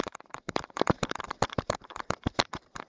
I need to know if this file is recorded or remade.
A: remade